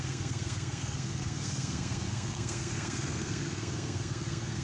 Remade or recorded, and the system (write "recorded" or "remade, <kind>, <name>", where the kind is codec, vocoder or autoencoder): remade, codec, SNAC